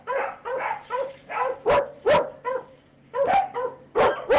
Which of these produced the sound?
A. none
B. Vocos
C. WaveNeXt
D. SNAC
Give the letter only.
A